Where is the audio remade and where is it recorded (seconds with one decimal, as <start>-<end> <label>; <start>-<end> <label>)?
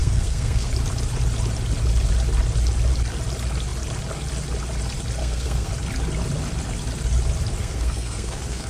0.0-0.7 remade; 0.7-5.2 recorded; 5.2-5.7 remade; 5.7-7.6 recorded; 7.6-8.7 remade